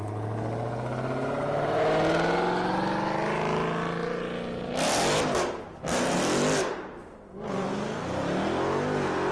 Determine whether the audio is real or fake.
real